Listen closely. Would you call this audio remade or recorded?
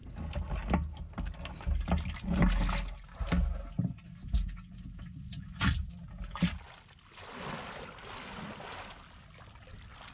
recorded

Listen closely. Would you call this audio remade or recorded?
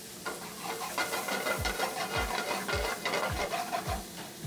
remade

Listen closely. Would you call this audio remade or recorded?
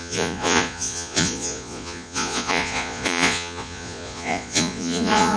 remade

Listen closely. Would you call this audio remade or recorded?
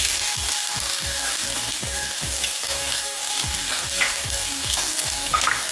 remade